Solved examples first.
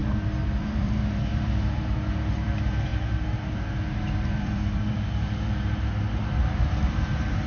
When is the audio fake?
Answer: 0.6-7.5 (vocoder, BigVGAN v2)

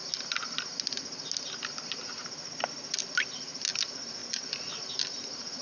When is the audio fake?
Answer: 4.2-4.9 (vocoder, BigVGAN v2)

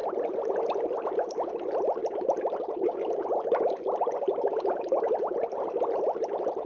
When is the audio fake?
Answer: 0.0-0.6 (vocoder, BigVGAN v2); 2.0-4.6

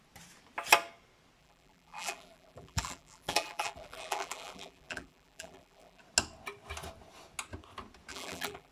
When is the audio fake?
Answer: 1.4-6.0 (vocoder, BigVGAN v2); 8.1-8.7

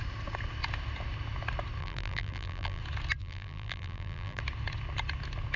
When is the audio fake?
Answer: 1.8-2.8 (vocoder, BigVGAN v2); 3.2-4.4

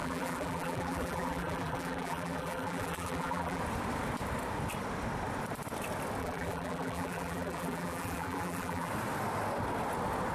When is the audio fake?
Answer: 0.0-3.6 (vocoder, BigVGAN v2); 6.2-8.9

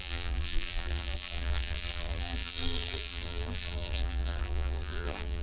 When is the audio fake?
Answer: 0.0-5.4 (vocoder, BigVGAN v2)

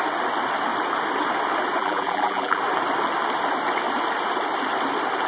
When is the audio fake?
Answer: 1.8-2.6 (vocoder, BigVGAN v2)